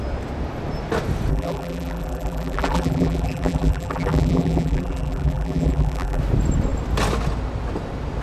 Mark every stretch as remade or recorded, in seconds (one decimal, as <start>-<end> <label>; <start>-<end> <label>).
0.0-1.3 recorded; 1.3-6.2 remade; 6.2-8.2 recorded